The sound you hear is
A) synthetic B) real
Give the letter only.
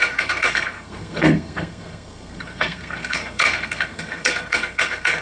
A